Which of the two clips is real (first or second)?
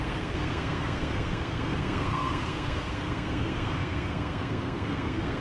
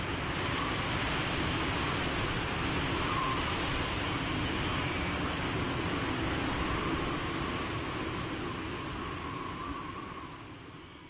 second